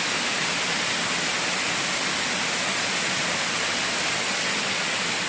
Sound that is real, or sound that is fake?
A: real